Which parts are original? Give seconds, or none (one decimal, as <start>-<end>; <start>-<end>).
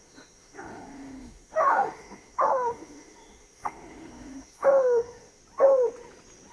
5.4-6.5